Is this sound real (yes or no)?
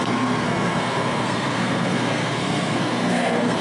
no